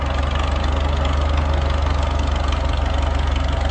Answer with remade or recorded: recorded